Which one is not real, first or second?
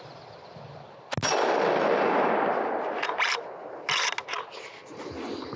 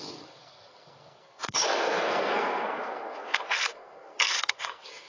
second